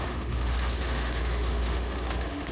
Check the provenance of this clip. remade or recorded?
remade